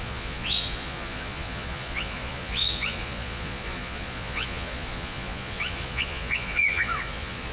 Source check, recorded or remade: remade